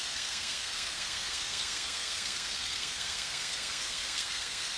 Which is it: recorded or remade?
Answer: remade